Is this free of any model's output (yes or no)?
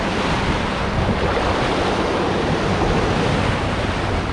yes